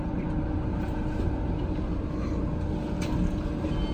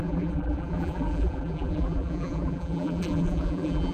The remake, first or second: second